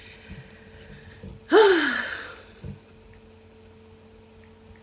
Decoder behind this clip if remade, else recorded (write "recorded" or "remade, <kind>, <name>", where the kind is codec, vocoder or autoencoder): recorded